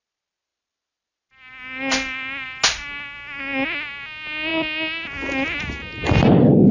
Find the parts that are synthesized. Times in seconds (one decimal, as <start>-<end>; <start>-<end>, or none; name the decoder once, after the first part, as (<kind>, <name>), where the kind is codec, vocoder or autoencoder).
none